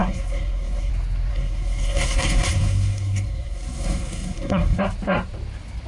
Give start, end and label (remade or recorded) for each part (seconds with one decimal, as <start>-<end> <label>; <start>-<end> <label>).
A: 0.0-0.9 remade; 0.9-1.3 recorded; 1.3-4.8 remade; 4.8-5.9 recorded